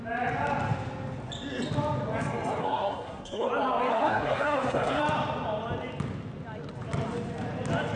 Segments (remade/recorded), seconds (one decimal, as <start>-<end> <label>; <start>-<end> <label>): 0.0-2.6 recorded; 2.6-3.5 remade; 3.5-3.9 recorded; 3.9-5.0 remade; 5.0-8.0 recorded